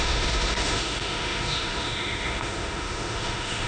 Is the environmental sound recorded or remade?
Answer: remade